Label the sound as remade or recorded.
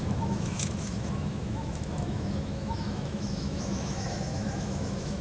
remade